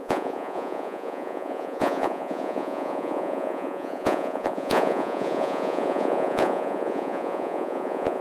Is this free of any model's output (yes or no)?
no